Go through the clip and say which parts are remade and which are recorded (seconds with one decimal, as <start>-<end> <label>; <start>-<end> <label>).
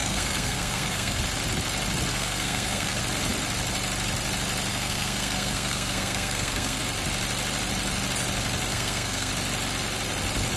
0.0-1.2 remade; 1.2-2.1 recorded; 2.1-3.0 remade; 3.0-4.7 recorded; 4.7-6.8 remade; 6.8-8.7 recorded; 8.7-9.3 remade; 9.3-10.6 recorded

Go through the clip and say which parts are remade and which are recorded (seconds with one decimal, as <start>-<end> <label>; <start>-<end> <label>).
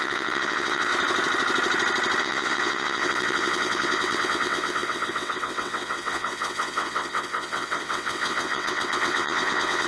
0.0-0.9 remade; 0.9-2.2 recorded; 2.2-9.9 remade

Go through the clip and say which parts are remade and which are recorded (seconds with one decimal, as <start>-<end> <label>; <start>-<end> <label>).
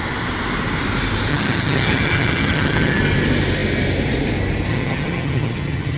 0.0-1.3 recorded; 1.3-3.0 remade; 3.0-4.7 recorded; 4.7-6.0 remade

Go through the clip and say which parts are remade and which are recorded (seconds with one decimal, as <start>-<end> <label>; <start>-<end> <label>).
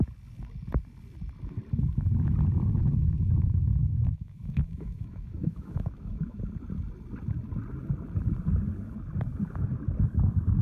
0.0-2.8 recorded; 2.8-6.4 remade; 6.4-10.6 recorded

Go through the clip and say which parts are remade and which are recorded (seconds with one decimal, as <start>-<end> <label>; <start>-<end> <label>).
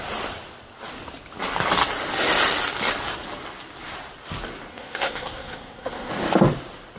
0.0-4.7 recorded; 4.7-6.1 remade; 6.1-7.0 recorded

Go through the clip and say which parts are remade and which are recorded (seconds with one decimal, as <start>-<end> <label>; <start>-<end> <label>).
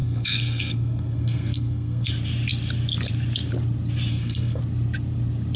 0.0-2.1 remade; 2.1-4.1 recorded; 4.1-4.6 remade; 4.6-5.6 recorded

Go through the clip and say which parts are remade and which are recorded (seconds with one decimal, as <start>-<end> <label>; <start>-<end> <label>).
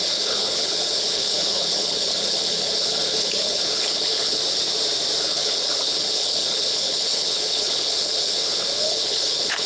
0.0-4.4 remade; 4.4-5.2 recorded; 5.2-9.7 remade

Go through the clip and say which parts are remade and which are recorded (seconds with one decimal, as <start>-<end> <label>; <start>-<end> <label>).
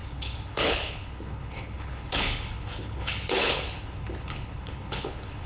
0.0-5.5 remade